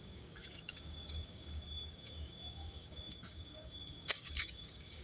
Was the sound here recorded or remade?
remade